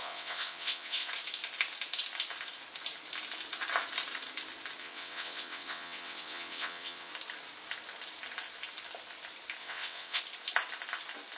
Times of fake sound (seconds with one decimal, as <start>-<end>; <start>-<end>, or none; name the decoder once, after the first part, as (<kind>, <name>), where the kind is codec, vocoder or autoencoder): 0.0-1.1 (vocoder, WaveNeXt); 4.8-7.1; 9.6-10.2